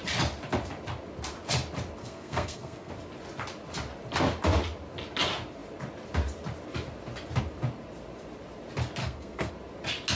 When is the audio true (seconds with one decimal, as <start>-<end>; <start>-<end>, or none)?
0.0-2.0; 2.9-9.0; 9.5-10.2